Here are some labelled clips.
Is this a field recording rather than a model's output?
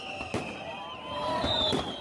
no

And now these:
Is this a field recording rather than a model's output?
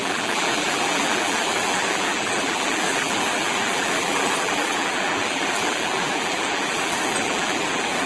no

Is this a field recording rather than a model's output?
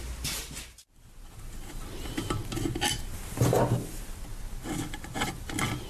yes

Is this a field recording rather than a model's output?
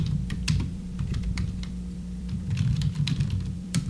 no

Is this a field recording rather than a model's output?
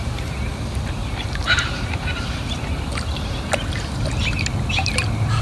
yes